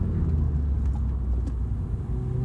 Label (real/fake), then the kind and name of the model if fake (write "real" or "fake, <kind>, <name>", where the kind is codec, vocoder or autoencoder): real